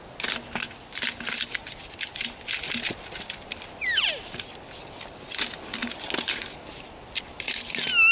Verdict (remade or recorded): recorded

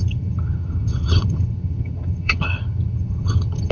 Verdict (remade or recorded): remade